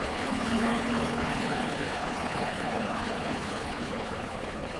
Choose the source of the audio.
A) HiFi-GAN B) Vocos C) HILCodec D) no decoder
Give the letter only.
C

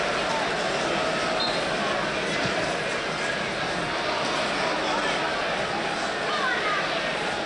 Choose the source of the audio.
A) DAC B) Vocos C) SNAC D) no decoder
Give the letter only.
D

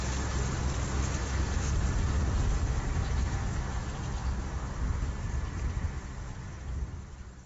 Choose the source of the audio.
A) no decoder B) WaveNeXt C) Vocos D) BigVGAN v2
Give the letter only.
A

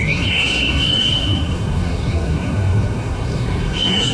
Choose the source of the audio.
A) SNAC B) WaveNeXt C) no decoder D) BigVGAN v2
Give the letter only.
A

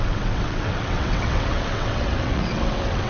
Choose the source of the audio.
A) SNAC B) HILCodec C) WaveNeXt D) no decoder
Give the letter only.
C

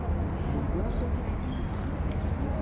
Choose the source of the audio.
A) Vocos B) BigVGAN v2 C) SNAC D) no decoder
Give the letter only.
D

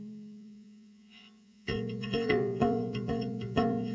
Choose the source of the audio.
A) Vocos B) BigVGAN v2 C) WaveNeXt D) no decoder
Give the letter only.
A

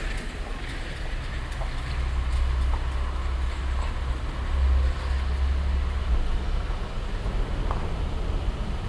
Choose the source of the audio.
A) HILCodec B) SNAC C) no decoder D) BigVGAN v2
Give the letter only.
C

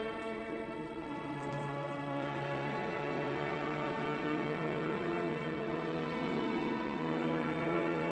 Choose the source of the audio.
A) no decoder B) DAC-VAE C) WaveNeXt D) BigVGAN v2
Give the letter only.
C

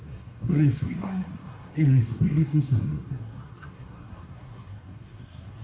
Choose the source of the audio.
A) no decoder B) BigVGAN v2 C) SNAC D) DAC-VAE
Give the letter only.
C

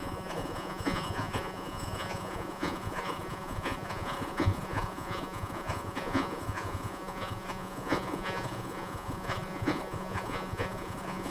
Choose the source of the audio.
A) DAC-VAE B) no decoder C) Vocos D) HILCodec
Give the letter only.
C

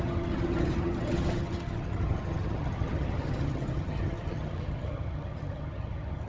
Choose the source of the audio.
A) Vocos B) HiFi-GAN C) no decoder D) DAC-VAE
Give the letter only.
B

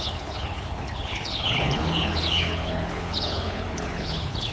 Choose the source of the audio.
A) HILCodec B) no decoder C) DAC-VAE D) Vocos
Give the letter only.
A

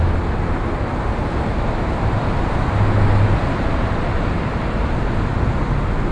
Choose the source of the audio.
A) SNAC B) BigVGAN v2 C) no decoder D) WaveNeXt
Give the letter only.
C